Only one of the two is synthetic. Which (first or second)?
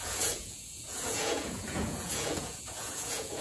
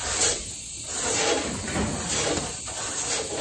first